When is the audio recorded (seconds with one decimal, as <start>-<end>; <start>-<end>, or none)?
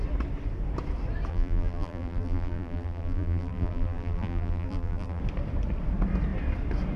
0.0-1.3; 5.2-7.0